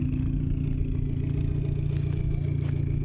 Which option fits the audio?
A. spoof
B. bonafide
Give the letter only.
B